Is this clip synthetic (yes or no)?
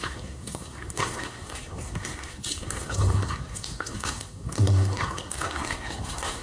yes